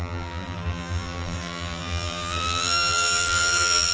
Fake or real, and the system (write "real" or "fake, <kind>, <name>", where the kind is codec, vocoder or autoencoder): fake, vocoder, BigVGAN v2